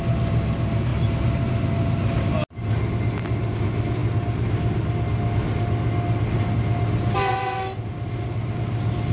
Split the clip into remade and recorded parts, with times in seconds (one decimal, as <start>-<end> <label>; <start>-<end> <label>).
0.0-9.1 recorded